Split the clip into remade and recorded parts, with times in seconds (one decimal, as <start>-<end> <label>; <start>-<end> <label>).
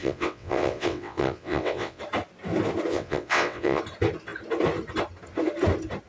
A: 0.0-2.0 remade; 2.0-2.9 recorded; 2.9-3.8 remade; 3.8-6.1 recorded